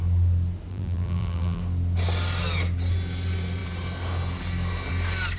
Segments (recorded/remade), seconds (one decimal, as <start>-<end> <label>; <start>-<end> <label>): 0.0-0.7 recorded; 0.7-1.6 remade; 1.6-5.4 recorded